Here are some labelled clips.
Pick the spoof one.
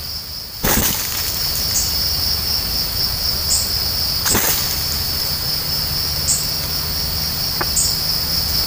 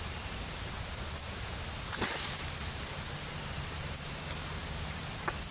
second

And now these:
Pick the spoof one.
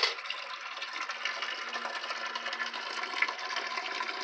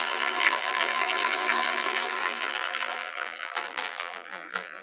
second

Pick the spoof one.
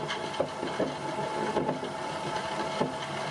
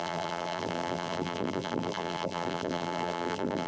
second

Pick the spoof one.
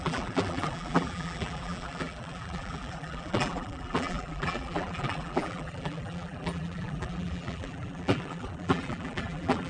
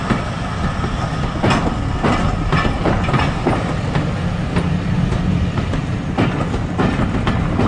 first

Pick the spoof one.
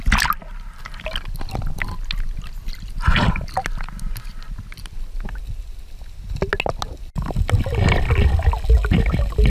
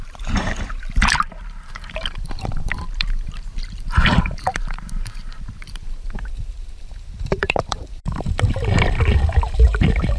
second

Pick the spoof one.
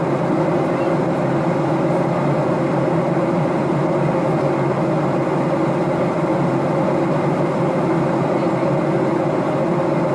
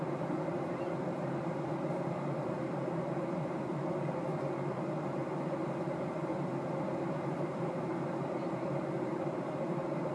second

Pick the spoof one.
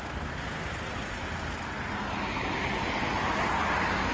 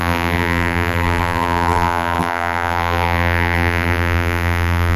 second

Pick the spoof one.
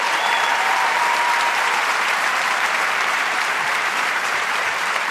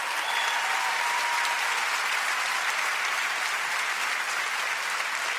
first